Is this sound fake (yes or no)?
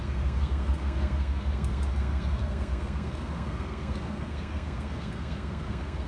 yes